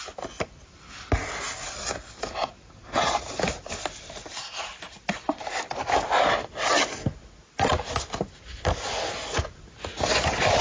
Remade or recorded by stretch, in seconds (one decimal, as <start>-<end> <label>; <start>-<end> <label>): 0.0-10.6 recorded